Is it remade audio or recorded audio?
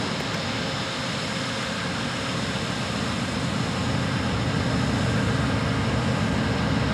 recorded